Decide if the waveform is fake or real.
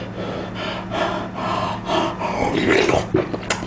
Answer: real